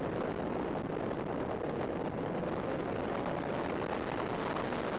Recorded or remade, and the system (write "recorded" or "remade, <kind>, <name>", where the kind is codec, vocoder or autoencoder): recorded